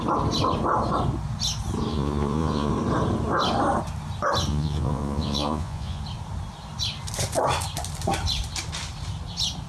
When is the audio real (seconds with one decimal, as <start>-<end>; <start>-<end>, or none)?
0.0-1.9; 2.7-4.5; 6.0-9.7